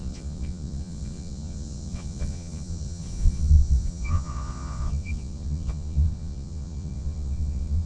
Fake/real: fake